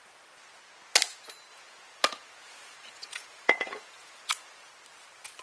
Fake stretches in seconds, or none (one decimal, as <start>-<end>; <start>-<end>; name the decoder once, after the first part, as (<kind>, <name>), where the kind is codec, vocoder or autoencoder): 1.5-4.7 (vocoder, Vocos)